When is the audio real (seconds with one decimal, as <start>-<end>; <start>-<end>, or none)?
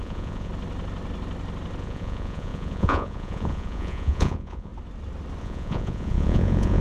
0.5-1.8; 4.7-5.4